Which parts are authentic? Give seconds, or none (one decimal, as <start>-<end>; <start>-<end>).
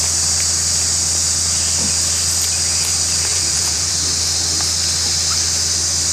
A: 0.0-3.3; 3.9-6.1